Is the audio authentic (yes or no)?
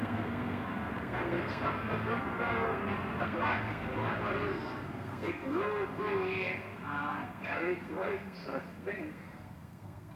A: no